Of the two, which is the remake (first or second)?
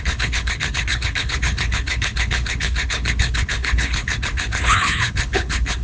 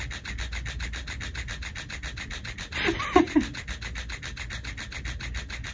first